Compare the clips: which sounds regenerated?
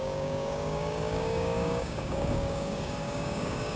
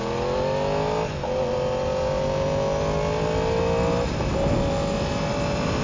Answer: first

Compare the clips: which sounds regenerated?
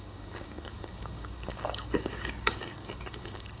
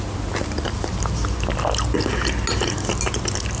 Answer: first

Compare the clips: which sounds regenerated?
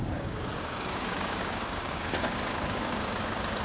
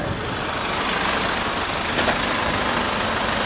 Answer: first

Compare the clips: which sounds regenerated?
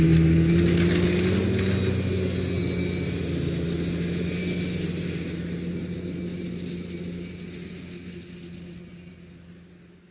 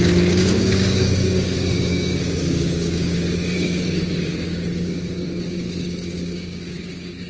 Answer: second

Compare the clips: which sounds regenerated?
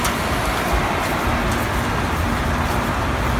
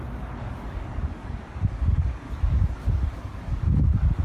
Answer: second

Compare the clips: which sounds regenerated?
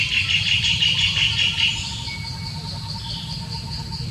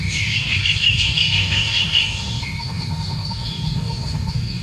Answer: second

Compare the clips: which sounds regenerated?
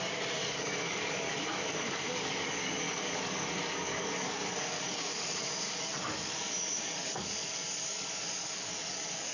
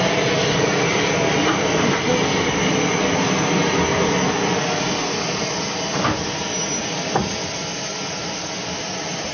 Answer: first